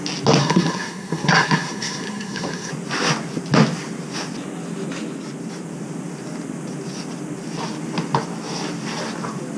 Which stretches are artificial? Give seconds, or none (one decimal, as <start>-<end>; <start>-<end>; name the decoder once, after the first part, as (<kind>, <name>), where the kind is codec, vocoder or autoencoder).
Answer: 0.4-2.7 (codec, SNAC)